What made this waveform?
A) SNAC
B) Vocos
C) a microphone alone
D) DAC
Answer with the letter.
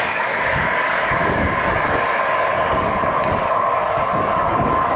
D